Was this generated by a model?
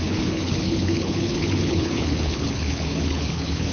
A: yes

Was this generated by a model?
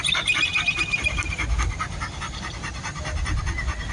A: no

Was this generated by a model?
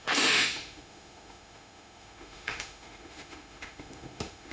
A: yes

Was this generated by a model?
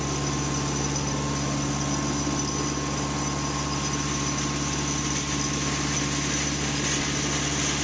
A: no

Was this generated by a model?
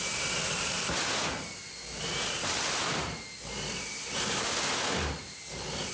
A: no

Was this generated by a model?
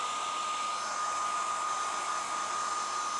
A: no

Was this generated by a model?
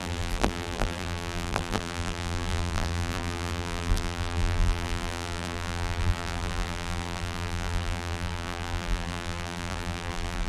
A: yes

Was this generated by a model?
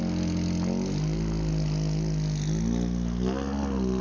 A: no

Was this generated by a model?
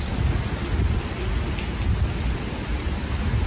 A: no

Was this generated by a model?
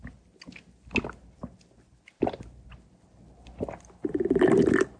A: no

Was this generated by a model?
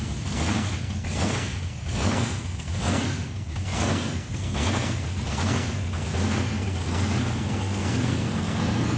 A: yes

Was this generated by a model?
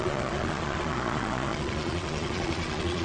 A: yes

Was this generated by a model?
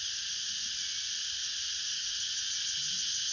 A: no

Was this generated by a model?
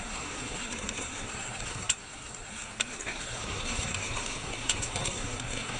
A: yes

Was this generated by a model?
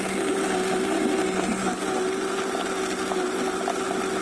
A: no